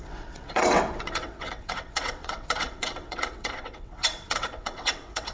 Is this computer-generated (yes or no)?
yes